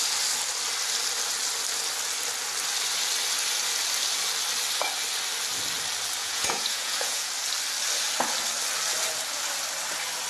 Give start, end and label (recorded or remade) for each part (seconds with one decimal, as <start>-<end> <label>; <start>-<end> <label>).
0.0-6.2 recorded; 6.2-7.3 remade; 7.3-10.3 recorded